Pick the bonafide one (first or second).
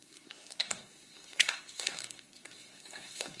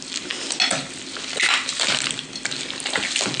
second